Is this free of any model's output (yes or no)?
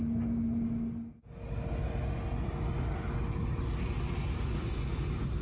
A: yes